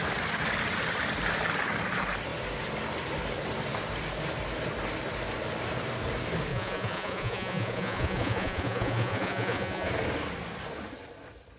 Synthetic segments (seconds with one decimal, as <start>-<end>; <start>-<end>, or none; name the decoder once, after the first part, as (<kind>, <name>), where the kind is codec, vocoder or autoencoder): 6.5-9.9 (vocoder, Vocos)